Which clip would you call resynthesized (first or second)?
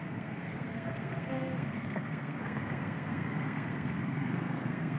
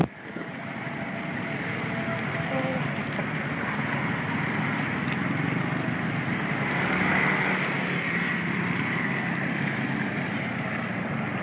first